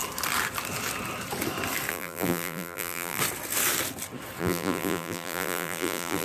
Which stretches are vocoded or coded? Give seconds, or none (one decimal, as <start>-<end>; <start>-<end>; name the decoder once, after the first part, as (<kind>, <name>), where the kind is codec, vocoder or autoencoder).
1.9-3.2 (vocoder, BigVGAN v2); 4.4-6.2